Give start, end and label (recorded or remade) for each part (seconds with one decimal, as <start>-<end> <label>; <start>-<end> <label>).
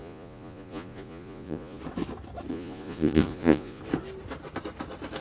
0.0-1.8 remade; 1.8-2.5 recorded; 2.5-3.8 remade; 3.8-5.2 recorded